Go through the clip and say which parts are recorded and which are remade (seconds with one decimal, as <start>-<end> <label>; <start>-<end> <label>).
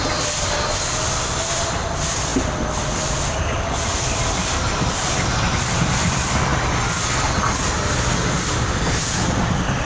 0.0-2.3 remade; 2.3-3.0 recorded; 3.0-6.5 remade; 6.5-9.8 recorded